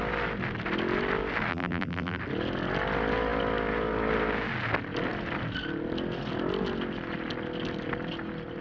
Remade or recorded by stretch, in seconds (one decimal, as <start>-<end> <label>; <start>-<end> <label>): 0.0-1.5 recorded; 1.5-2.2 remade; 2.2-8.6 recorded